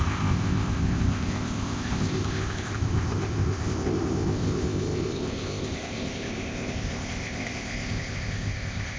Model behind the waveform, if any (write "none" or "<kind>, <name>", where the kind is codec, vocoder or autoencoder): codec, ZipCodec